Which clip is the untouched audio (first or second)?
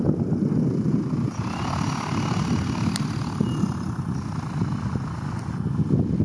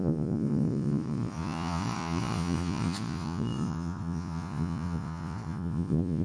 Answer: first